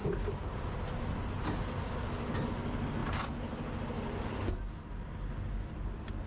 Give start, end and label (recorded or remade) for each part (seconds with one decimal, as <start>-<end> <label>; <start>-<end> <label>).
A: 0.0-6.3 recorded